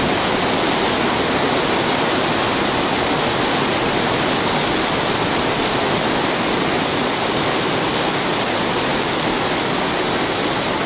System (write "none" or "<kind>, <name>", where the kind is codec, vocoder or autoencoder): none